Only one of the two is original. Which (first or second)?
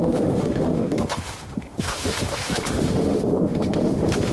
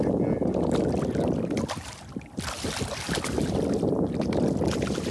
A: second